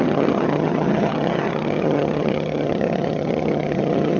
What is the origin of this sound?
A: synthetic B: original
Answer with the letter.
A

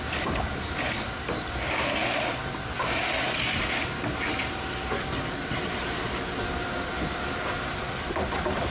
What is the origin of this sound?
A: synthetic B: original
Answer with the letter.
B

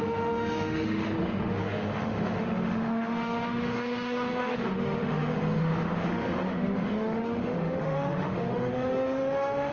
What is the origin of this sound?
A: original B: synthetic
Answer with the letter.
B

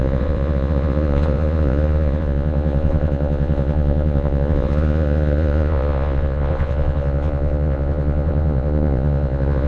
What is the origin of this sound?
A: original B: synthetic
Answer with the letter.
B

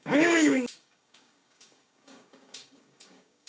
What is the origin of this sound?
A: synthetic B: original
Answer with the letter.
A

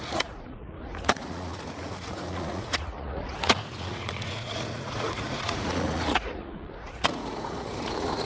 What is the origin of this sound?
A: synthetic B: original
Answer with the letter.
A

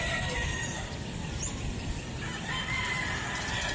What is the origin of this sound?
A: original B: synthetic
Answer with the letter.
A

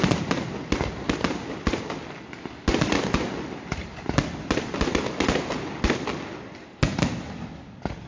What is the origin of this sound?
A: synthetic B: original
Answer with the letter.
B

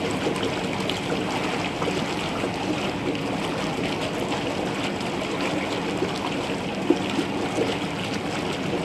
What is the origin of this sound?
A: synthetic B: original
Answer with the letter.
B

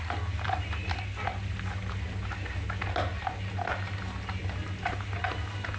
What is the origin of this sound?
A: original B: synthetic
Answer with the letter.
A